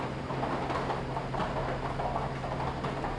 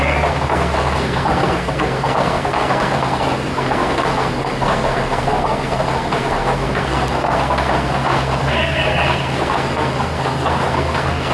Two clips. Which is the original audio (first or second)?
first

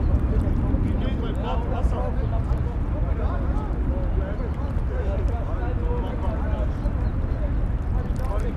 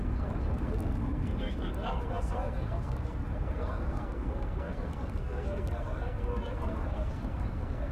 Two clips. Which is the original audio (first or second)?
first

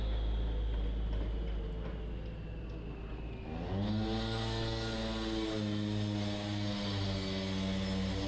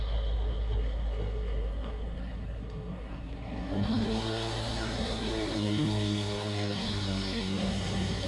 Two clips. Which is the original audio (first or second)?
first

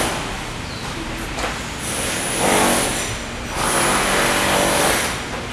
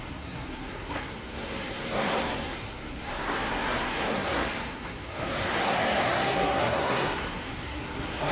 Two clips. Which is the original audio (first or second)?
first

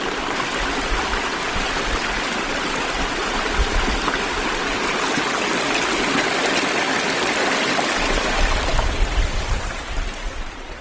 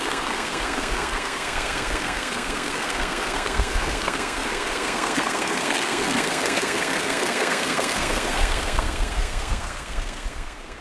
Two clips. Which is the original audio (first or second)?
first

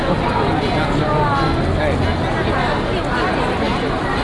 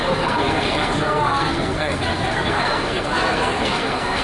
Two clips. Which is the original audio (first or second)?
first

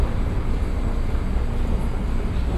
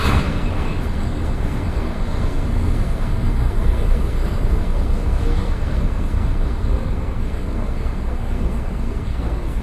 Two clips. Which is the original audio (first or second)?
first